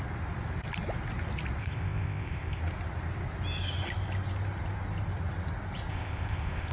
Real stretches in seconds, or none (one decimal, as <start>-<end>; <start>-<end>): 0.0-1.6; 2.6-5.9